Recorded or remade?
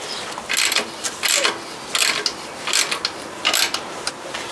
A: recorded